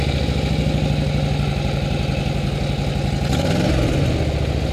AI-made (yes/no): no